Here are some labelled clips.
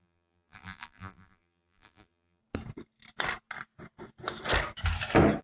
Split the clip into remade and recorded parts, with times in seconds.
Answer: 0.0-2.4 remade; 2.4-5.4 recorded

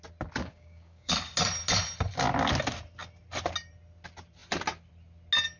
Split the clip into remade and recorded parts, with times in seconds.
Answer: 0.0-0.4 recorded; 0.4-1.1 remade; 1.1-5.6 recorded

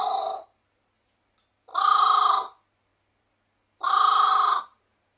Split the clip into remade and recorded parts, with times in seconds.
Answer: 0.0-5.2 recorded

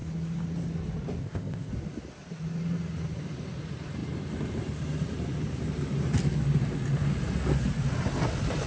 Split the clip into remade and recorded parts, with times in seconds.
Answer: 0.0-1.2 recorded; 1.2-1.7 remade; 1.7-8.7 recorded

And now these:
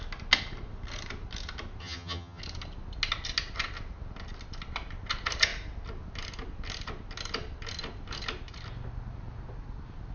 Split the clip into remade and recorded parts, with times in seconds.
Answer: 0.0-1.8 recorded; 1.8-2.4 remade; 2.4-10.1 recorded

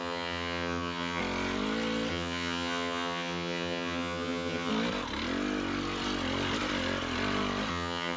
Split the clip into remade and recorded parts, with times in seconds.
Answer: 0.0-1.2 remade; 1.2-2.1 recorded; 2.1-4.7 remade; 4.7-7.7 recorded; 7.7-8.2 remade

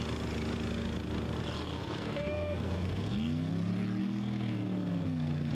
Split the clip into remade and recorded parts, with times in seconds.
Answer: 0.0-1.7 recorded; 1.7-3.5 remade; 3.5-4.0 recorded; 4.0-5.5 remade

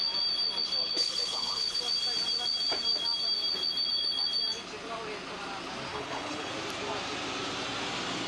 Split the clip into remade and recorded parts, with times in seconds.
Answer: 0.0-0.8 recorded; 0.8-1.8 remade; 1.8-5.9 recorded; 5.9-6.5 remade; 6.5-8.3 recorded